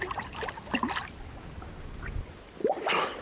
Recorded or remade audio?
recorded